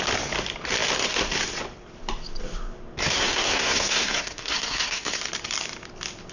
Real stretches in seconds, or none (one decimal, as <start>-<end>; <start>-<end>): 0.0-3.0; 5.2-6.3